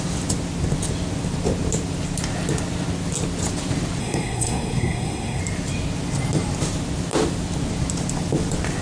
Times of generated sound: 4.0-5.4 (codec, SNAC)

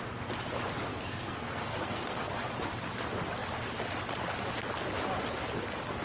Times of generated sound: 0.9-2.3 (codec, SNAC)

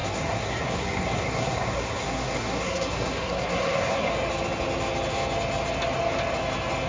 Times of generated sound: 0.0-4.1 (codec, SNAC)

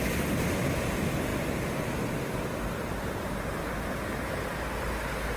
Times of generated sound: none

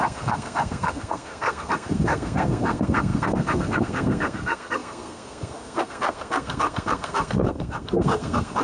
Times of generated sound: 0.0-8.6 (codec, SNAC)

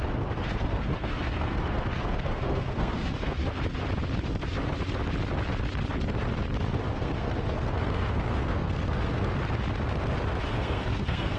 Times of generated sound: 0.0-3.4 (codec, SNAC); 6.7-9.3; 10.5-11.4

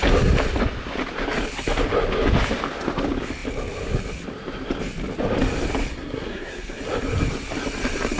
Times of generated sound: 5.9-6.8 (codec, SNAC)